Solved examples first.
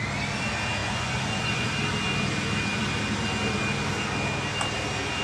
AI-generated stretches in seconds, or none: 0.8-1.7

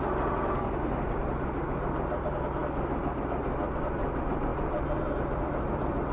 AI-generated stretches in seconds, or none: none

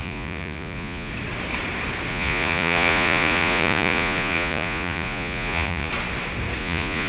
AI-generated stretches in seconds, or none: 0.0-1.1; 2.1-5.9; 6.6-7.1

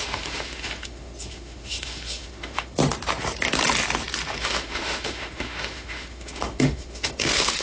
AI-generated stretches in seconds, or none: 0.0-2.8; 4.4-7.6

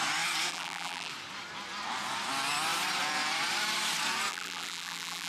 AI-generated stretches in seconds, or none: 0.5-1.1; 4.3-5.3

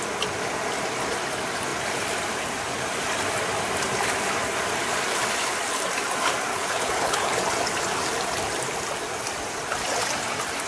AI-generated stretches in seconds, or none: 6.5-7.3

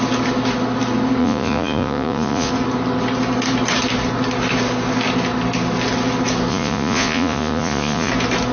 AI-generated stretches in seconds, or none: 1.2-2.5; 6.5-8.1